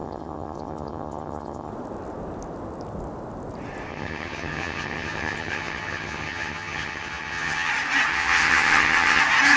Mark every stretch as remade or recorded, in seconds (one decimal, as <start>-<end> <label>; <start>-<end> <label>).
0.0-1.7 remade; 1.7-3.9 recorded; 3.9-7.7 remade; 7.7-8.1 recorded; 8.1-9.2 remade; 9.2-9.6 recorded